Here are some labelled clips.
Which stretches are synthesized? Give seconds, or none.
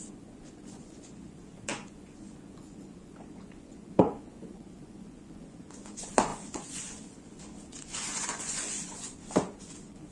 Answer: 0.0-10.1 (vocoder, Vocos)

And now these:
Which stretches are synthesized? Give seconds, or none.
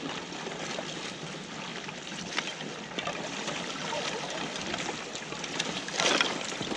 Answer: none